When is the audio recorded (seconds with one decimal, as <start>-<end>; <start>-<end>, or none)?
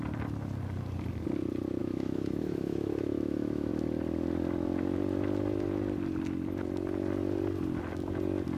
0.0-1.8; 3.7-8.6